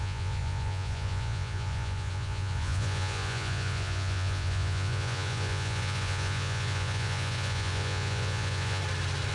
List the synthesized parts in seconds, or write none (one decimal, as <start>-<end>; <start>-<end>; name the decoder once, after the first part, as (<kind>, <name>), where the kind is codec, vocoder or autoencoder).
0.0-8.8 (vocoder, Vocos)